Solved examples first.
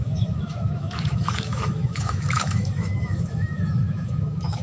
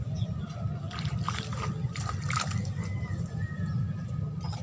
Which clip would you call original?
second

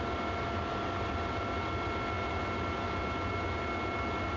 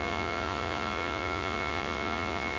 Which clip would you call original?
first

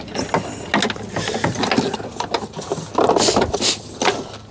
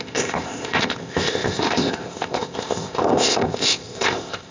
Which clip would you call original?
first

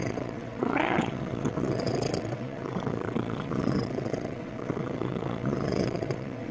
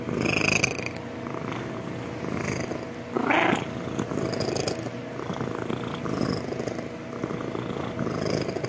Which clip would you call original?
second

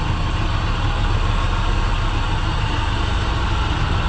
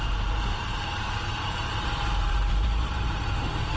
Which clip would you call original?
first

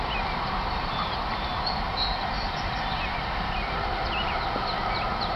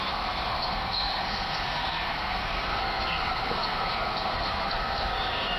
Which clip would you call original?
first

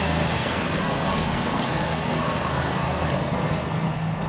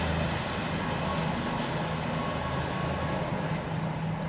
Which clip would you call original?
second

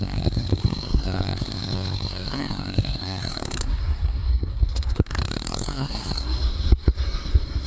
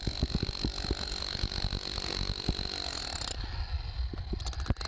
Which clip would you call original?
second